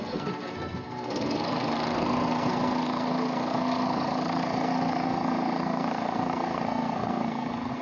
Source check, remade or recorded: remade